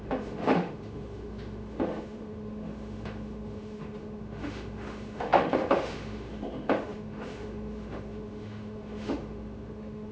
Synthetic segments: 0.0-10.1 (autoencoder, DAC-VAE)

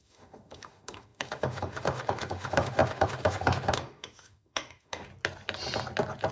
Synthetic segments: 0.0-5.1 (autoencoder, DAC-VAE)

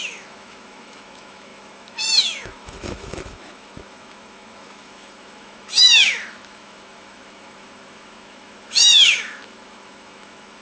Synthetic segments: 0.0-10.6 (autoencoder, DAC-VAE)

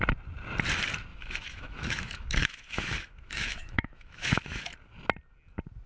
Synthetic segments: 1.1-4.6 (autoencoder, DAC-VAE)